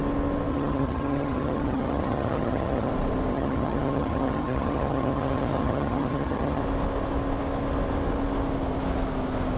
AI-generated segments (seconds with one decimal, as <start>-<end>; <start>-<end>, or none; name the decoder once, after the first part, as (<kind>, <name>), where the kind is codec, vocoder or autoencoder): 0.5-2.9 (vocoder, HiFi-GAN); 3.3-6.6